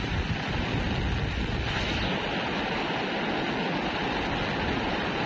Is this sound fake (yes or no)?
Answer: no